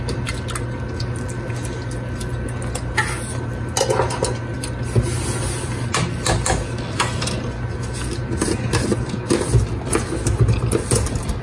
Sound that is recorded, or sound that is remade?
recorded